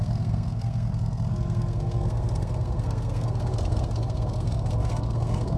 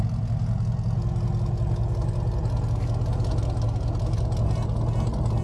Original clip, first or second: second